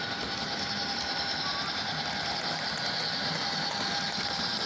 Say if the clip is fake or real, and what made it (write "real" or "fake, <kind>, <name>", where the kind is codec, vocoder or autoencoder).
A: fake, vocoder, BigVGAN v2